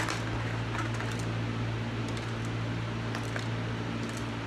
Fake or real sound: real